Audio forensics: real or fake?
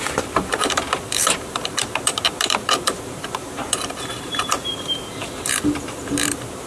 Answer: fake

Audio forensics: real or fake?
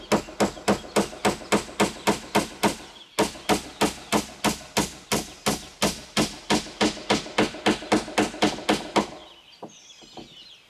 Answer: real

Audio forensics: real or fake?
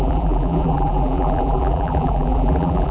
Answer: fake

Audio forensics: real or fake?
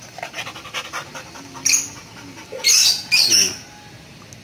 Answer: real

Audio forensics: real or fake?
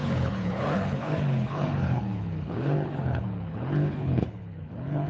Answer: fake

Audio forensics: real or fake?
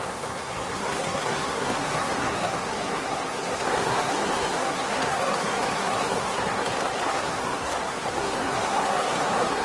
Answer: fake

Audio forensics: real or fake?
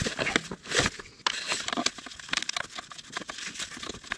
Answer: real